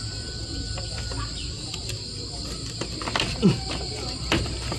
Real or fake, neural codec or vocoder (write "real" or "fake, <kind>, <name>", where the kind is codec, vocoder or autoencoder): real